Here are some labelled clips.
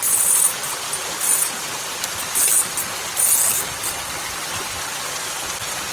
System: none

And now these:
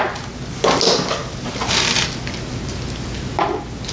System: none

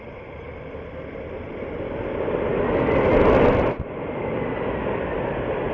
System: none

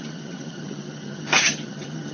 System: vocoder, HiFi-GAN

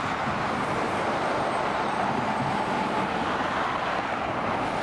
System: none